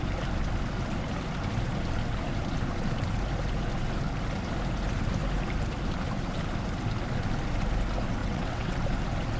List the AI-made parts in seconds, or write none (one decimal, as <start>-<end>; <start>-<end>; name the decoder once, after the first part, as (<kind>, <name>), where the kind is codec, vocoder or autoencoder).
8.2-8.8 (vocoder, WaveNeXt)